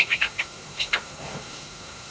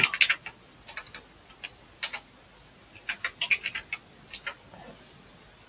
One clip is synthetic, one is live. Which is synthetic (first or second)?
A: first